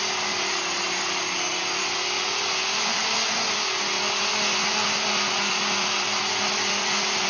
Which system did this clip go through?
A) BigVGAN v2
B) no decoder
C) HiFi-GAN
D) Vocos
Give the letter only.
B